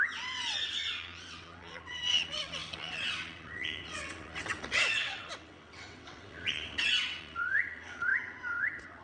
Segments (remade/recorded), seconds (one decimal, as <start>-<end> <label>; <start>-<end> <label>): 0.0-9.0 remade